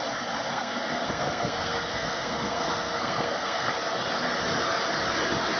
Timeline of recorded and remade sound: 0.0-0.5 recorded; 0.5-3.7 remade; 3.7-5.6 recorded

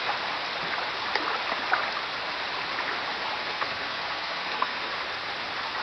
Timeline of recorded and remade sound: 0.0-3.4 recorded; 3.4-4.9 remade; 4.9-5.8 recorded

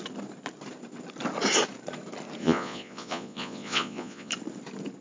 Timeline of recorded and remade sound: 0.0-2.4 recorded; 2.4-4.3 remade; 4.3-5.0 recorded